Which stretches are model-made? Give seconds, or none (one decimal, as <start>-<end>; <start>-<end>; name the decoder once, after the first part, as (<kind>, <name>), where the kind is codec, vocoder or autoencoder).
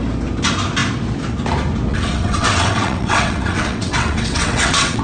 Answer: 1.9-5.0 (vocoder, WaveNeXt)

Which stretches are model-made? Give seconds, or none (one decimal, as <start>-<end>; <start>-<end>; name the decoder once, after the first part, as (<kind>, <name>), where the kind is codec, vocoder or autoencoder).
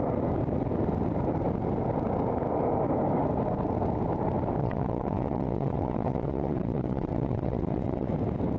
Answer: 4.6-8.1 (vocoder, WaveNeXt)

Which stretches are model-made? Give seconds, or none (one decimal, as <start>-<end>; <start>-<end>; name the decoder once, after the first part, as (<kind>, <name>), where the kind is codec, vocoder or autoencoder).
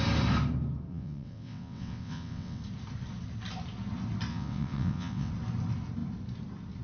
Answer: 0.9-2.6 (vocoder, WaveNeXt); 4.3-5.3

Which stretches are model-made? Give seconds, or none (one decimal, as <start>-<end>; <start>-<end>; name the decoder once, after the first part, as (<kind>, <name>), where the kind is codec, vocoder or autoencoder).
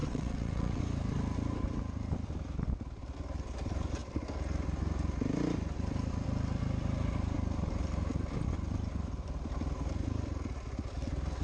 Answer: 0.0-0.8 (vocoder, WaveNeXt)